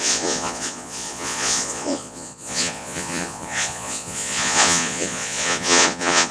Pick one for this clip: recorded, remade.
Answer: remade